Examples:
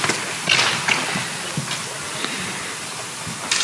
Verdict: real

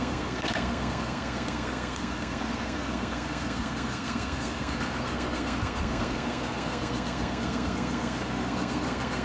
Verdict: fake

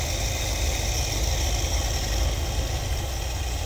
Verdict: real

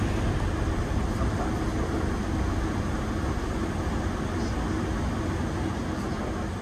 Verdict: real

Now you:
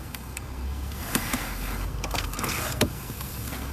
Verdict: fake